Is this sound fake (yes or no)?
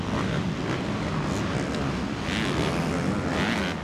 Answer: no